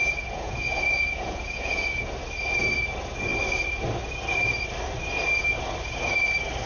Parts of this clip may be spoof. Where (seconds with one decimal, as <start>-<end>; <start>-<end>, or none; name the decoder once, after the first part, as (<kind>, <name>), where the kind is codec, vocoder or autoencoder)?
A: 0.0-2.1 (vocoder, Vocos)